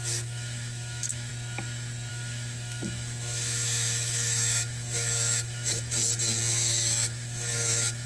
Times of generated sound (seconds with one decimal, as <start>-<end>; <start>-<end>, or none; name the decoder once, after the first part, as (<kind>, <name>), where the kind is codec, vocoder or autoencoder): 0.0-1.3 (autoencoder, DAC-VAE); 2.1-6.0; 6.5-8.1